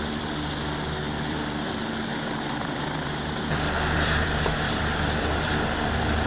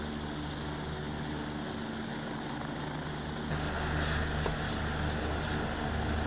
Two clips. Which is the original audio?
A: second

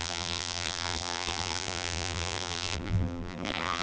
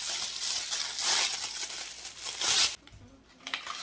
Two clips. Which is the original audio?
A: second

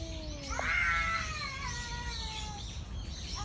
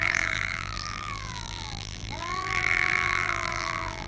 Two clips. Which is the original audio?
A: first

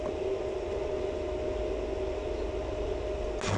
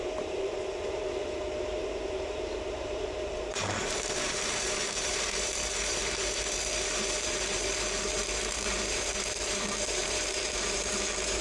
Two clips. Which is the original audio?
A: first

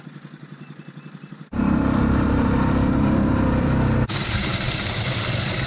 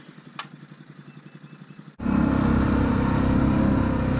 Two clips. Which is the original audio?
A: second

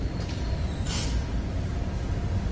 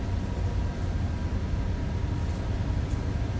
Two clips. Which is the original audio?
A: second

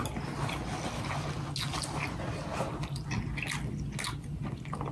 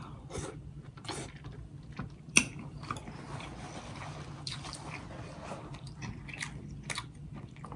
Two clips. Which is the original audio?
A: first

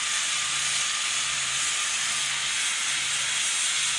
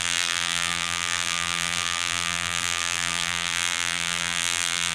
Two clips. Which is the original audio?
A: first